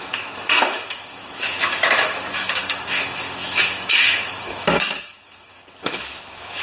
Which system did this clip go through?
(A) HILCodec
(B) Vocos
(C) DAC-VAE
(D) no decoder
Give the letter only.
C